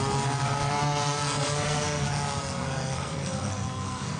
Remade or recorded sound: remade